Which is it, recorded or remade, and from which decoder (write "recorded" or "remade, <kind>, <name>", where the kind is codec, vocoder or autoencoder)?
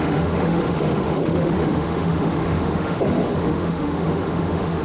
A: remade, autoencoder, DAC-VAE